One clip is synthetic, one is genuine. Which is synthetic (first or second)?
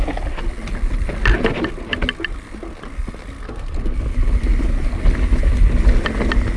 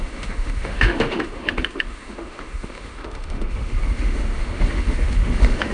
second